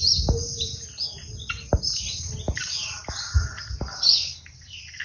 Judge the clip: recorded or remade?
recorded